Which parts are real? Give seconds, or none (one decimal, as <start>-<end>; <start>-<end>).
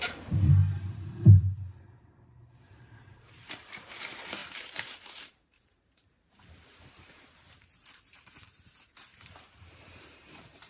none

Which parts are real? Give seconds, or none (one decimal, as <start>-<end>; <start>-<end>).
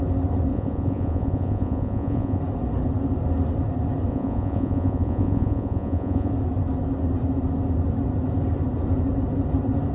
0.0-0.5; 2.4-4.1; 6.3-9.9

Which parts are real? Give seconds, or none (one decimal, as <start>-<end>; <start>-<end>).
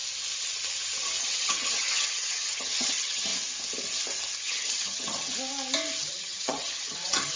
0.0-1.2; 3.3-4.4; 5.3-6.0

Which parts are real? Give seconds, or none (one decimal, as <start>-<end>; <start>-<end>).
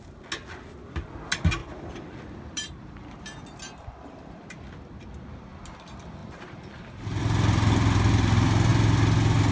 0.0-1.6; 5.6-6.2; 6.8-9.5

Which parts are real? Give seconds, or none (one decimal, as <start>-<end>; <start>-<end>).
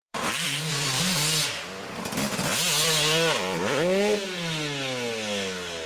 1.0-5.9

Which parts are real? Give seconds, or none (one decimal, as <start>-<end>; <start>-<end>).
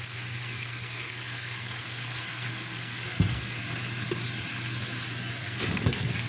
3.6-5.4